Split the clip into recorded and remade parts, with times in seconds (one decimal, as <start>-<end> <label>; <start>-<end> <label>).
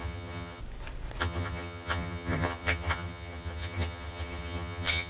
0.0-0.6 remade; 0.6-1.2 recorded; 1.2-5.1 remade